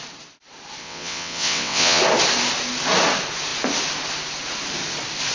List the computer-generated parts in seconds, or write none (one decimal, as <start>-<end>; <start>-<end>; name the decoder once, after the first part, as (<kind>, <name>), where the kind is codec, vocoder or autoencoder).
0.8-2.0 (vocoder, WaveNeXt)